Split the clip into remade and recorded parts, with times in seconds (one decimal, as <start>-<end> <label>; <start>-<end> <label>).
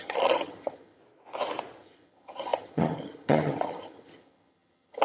0.0-1.0 remade; 1.0-1.8 recorded; 1.8-5.0 remade